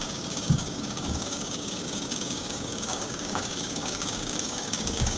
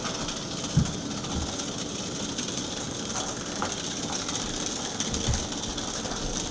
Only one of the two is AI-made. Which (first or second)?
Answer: first